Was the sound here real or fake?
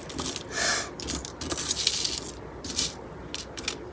real